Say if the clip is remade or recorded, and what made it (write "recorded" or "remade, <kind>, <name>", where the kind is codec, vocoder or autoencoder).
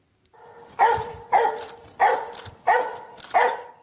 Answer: recorded